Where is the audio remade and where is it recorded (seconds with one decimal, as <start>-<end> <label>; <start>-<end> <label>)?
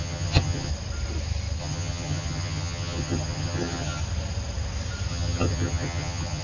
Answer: 0.0-0.7 remade; 0.7-1.6 recorded; 1.6-4.0 remade; 4.0-5.1 recorded; 5.1-6.4 remade